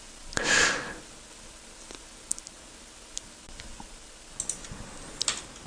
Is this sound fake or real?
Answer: real